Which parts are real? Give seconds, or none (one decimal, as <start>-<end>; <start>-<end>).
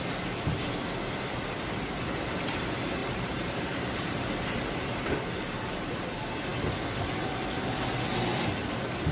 0.0-3.0; 5.3-9.1